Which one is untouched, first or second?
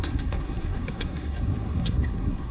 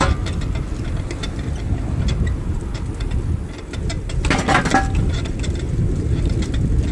second